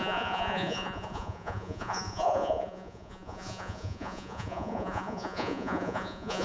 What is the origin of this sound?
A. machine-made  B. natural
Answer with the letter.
A